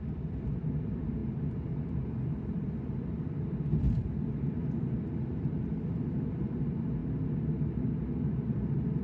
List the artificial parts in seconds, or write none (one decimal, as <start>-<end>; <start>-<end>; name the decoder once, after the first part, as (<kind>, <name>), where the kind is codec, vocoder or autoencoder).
0.0-7.0 (vocoder, BigVGAN v2); 8.2-9.0